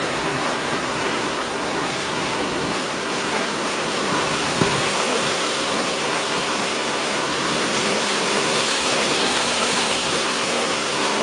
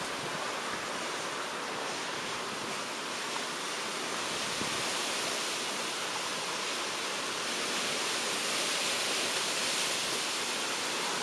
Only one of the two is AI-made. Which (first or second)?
first